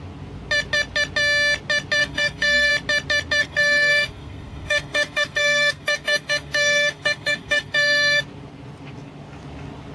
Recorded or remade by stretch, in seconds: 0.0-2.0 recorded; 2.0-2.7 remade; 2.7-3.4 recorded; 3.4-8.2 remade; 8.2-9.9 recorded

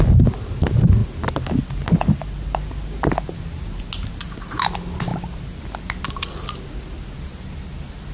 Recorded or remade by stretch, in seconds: 0.0-8.1 recorded

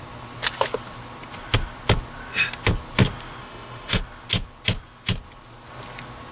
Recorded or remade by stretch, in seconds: 0.0-3.4 recorded; 3.4-4.0 remade; 4.0-6.3 recorded